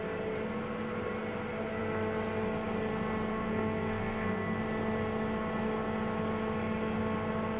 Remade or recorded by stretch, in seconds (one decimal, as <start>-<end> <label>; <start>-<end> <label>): 0.0-3.3 recorded; 3.3-4.6 remade; 4.6-7.6 recorded